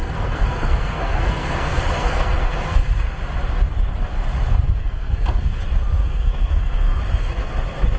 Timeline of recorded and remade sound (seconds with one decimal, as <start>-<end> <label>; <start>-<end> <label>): 0.0-3.2 remade; 3.2-4.8 recorded; 4.8-5.6 remade; 5.6-6.0 recorded; 6.0-7.0 remade; 7.0-8.0 recorded